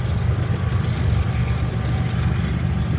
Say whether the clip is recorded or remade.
recorded